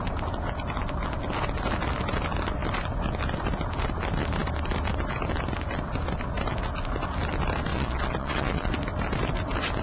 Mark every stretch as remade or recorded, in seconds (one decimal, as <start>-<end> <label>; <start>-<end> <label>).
0.0-7.7 recorded; 7.7-8.7 remade; 8.7-9.8 recorded